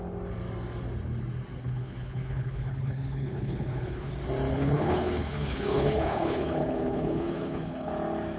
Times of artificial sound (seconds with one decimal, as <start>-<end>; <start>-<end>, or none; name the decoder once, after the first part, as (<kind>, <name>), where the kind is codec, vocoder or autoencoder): 1.6-4.1 (codec, HILCodec); 4.5-7.9